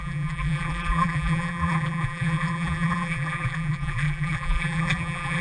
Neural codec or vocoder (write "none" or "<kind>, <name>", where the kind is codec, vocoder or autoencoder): vocoder, BigVGAN v2